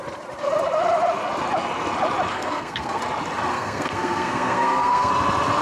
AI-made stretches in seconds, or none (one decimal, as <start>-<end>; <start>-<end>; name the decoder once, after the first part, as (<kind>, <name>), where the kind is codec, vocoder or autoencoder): 2.3-3.0 (codec, SNAC); 3.5-5.1